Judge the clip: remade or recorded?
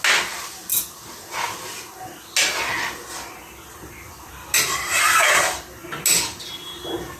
recorded